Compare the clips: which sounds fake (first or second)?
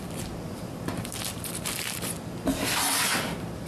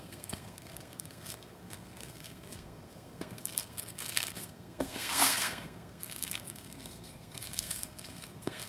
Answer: second